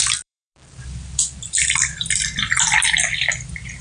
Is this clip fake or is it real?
fake